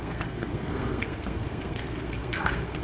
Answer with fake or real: fake